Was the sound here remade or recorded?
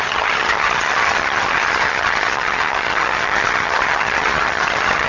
remade